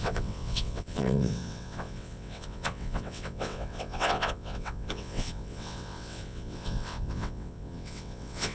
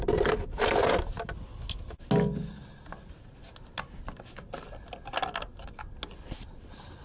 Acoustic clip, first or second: second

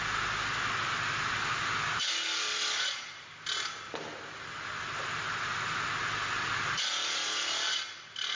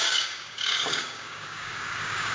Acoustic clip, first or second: first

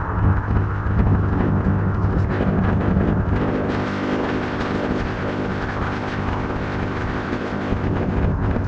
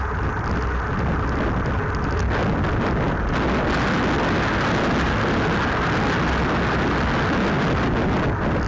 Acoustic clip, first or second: second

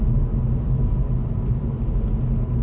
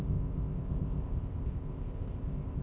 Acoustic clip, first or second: first